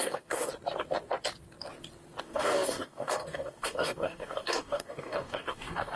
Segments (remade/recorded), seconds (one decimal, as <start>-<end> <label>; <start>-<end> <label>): 0.0-0.5 remade; 0.5-2.2 recorded; 2.2-6.0 remade